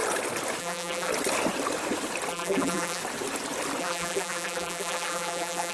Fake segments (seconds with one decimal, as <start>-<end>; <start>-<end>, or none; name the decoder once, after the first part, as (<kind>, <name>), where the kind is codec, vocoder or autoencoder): 0.6-1.1 (vocoder, BigVGAN v2); 2.3-3.0; 3.8-5.7